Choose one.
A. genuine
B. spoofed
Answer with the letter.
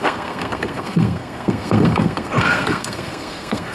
B